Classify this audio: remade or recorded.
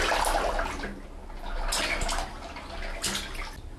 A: recorded